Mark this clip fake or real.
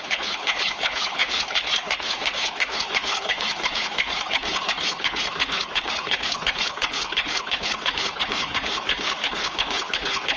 fake